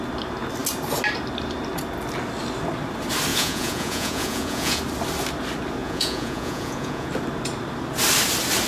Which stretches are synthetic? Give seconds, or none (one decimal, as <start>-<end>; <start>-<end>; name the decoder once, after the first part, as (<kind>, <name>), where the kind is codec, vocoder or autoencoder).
3.3-4.8 (vocoder, Vocos); 5.8-7.1